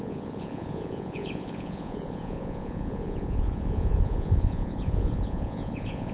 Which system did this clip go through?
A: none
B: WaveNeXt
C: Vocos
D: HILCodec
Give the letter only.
C